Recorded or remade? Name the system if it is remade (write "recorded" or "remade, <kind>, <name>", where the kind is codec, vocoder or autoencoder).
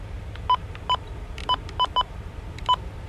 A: recorded